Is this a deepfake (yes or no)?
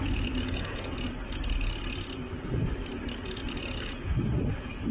no